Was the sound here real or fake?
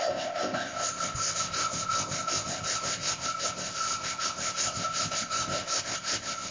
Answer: fake